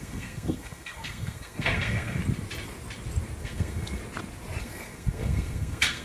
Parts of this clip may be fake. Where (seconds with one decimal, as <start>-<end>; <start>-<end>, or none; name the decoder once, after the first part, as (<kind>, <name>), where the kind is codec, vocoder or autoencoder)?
0.0-2.2 (codec, SNAC); 3.4-4.0; 4.6-6.0